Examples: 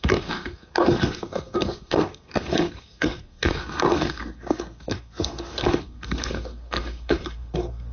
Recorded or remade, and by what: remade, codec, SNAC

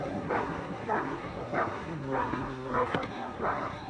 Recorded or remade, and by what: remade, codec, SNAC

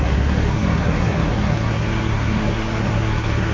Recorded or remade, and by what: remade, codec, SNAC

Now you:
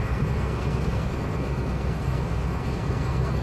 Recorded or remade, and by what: remade, codec, SNAC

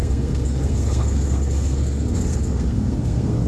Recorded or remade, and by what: remade, codec, SNAC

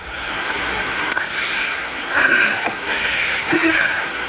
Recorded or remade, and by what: remade, codec, SNAC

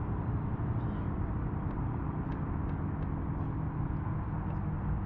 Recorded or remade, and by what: recorded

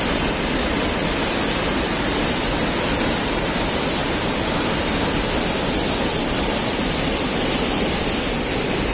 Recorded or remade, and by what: recorded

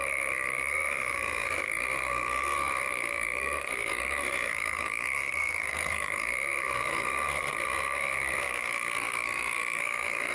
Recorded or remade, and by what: remade, codec, SNAC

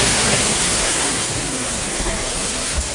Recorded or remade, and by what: remade, codec, SNAC